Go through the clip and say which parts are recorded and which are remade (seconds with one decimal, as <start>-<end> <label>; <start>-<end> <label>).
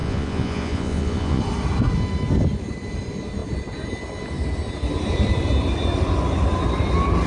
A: 0.0-1.4 remade; 1.4-7.3 recorded